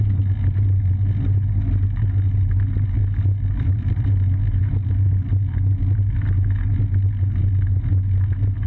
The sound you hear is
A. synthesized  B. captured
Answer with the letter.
B